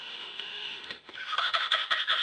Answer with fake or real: fake